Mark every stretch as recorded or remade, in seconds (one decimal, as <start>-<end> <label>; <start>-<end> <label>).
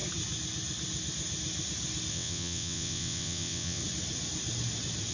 0.0-2.1 recorded; 2.1-3.8 remade; 3.8-5.1 recorded